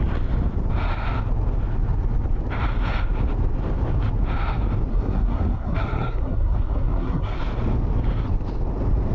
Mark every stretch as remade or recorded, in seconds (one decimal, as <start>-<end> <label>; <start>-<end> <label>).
0.0-4.9 recorded; 4.9-7.4 remade; 7.4-9.1 recorded